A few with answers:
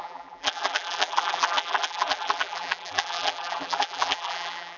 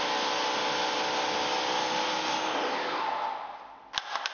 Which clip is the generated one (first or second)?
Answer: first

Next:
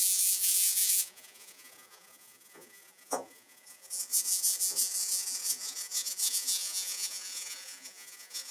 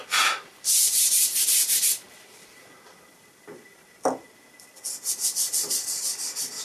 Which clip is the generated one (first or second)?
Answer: first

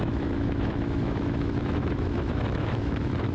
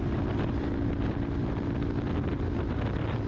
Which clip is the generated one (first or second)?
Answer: first